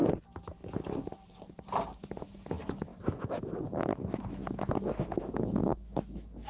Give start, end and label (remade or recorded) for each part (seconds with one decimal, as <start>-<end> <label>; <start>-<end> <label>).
0.0-2.9 recorded; 2.9-3.5 remade; 3.5-3.9 recorded; 3.9-6.5 remade